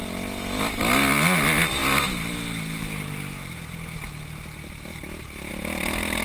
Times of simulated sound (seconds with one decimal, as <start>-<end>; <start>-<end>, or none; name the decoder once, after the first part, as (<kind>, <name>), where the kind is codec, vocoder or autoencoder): none